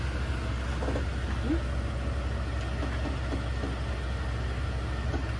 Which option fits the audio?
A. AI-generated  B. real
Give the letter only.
B